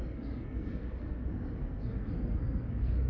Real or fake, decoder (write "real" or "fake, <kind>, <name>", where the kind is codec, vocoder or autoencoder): fake, codec, SNAC